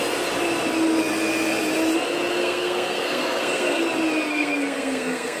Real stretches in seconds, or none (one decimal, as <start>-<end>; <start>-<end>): 0.0-2.4; 3.8-4.3